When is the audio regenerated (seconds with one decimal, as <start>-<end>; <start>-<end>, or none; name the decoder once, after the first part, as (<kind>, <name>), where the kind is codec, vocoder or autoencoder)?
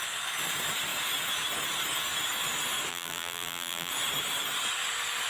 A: 2.9-3.9 (vocoder, BigVGAN v2)